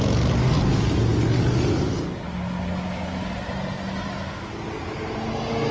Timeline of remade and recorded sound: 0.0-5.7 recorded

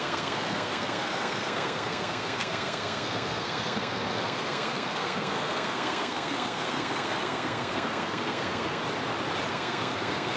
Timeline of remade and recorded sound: 0.0-8.8 remade; 8.8-9.5 recorded; 9.5-10.4 remade